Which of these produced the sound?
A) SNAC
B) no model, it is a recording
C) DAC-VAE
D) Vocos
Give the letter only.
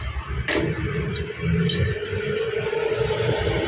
B